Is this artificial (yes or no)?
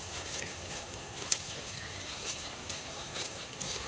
yes